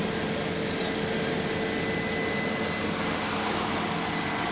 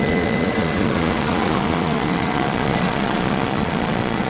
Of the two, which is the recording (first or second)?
first